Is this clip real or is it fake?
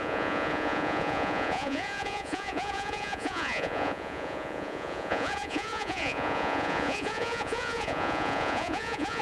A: fake